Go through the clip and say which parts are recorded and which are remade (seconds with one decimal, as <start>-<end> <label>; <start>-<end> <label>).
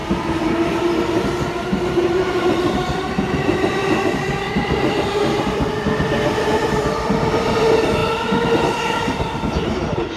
0.0-1.9 recorded; 1.9-8.0 remade; 8.0-8.6 recorded; 8.6-10.2 remade